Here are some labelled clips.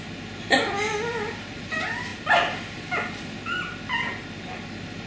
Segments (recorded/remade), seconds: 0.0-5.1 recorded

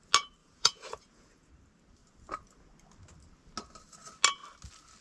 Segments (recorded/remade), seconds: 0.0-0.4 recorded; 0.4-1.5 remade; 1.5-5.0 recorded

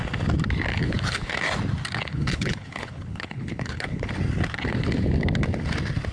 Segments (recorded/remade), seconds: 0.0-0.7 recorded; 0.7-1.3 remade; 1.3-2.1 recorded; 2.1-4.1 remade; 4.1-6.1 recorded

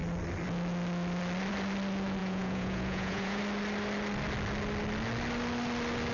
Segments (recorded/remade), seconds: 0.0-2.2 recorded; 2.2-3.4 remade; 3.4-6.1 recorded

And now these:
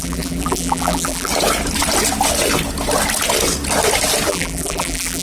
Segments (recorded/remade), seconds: 0.0-1.3 remade; 1.3-4.3 recorded; 4.3-5.2 remade